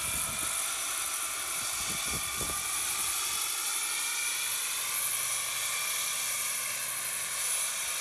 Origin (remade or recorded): remade